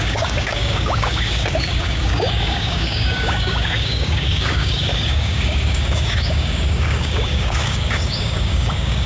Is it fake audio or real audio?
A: fake